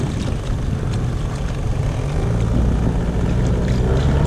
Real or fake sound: real